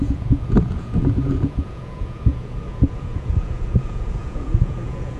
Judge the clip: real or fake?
fake